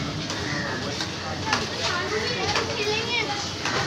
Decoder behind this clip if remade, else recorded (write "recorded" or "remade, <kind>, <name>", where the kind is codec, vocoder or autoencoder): recorded